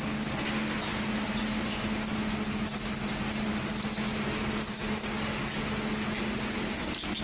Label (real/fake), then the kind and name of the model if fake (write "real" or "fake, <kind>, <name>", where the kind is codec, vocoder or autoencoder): real